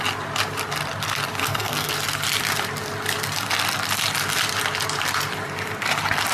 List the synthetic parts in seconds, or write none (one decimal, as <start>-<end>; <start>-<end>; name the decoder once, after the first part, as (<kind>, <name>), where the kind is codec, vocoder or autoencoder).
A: 1.4-1.9 (codec, SNAC)